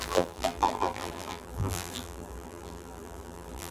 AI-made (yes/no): yes